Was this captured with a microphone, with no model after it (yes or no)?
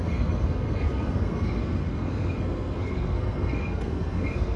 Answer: no